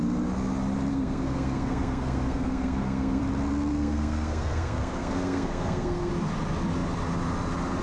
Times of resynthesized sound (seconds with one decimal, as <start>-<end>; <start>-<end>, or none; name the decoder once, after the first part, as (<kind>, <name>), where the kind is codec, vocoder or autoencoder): 0.9-3.2 (codec, SNAC); 3.7-6.1